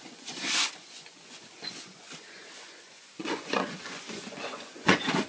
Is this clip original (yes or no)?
no